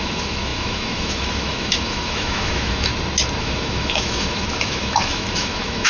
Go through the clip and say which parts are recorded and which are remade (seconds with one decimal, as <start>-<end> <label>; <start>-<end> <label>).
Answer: 0.0-2.9 remade; 2.9-3.4 recorded; 3.4-5.9 remade